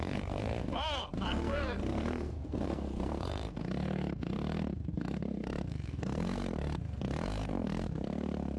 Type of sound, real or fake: fake